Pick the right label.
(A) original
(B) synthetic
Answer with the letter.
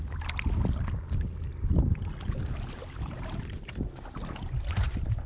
A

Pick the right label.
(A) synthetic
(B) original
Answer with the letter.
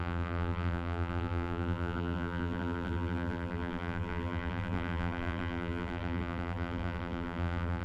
A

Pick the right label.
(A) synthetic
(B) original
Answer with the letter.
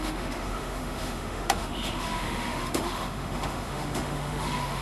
A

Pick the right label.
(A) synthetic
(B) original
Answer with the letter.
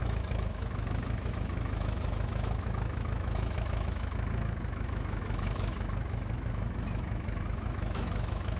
A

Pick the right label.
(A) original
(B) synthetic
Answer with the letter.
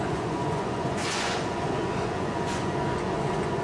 B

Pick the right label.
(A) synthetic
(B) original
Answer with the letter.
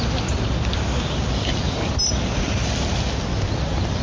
B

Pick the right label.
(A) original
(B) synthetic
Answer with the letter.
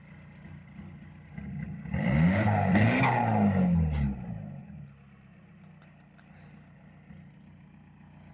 A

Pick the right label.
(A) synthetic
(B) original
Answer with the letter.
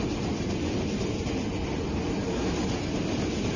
B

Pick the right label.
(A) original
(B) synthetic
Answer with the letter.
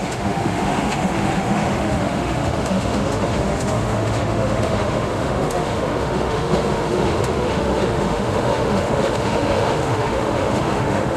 B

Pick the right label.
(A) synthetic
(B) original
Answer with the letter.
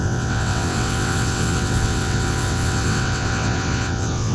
A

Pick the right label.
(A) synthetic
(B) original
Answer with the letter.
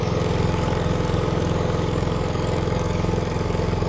A